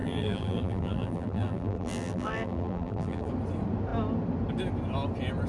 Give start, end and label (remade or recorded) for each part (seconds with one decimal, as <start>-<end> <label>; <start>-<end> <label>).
0.0-3.3 remade; 3.3-5.5 recorded